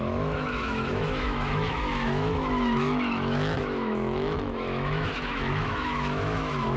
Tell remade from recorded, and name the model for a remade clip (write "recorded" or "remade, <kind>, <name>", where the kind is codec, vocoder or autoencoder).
remade, autoencoder, DAC-VAE